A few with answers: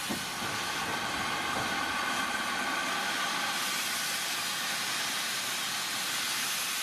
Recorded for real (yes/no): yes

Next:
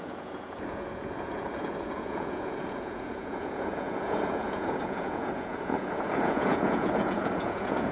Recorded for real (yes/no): no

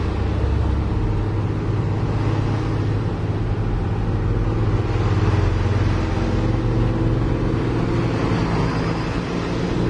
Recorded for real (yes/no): yes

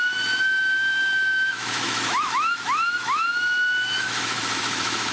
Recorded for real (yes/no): no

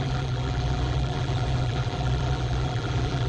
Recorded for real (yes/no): no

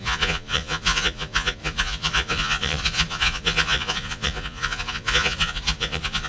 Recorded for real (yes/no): no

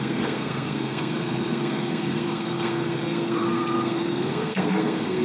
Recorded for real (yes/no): no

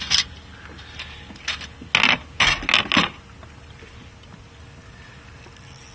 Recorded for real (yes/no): yes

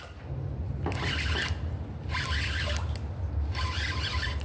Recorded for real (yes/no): yes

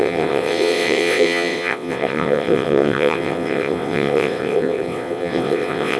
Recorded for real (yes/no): no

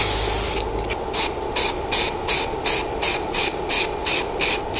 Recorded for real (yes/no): yes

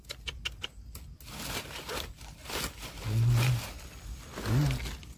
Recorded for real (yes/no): yes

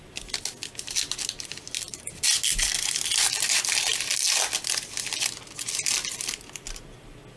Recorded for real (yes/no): yes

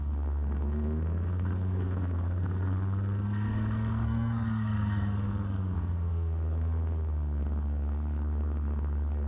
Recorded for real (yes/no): no